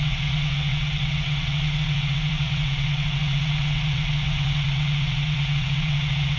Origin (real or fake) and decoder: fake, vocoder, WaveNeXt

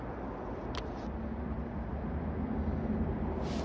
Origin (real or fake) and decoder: real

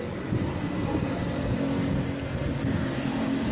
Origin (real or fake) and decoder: real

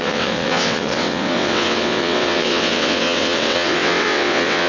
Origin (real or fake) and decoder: fake, vocoder, WaveNeXt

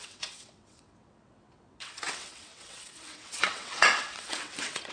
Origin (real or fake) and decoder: fake, vocoder, WaveNeXt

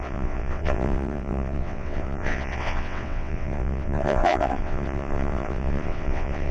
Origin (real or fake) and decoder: fake, vocoder, WaveNeXt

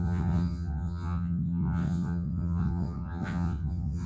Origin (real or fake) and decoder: fake, vocoder, WaveNeXt